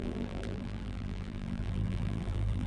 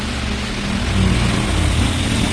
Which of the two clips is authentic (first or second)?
second